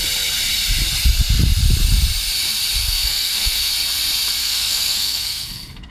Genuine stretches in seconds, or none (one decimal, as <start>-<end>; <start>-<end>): 0.0-2.8; 3.7-4.4